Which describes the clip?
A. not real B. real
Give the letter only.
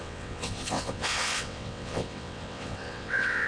A